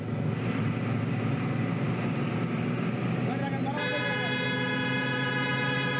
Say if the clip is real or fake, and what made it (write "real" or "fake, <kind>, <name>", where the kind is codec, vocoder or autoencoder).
real